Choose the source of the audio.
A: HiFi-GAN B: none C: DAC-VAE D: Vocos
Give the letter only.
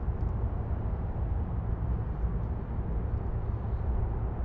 B